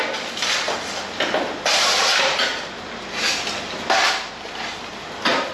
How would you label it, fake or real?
real